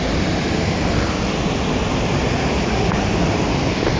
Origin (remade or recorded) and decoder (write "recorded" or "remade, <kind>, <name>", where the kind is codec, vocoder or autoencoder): recorded